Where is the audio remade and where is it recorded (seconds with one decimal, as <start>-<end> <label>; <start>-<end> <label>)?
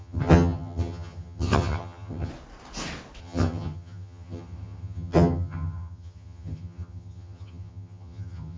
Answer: 0.0-2.3 remade; 2.3-3.2 recorded; 3.2-8.6 remade